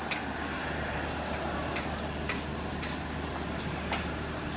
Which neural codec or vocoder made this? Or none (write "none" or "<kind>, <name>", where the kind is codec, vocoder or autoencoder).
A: none